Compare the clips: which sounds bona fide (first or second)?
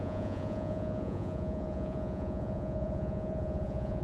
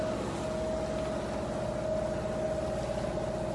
second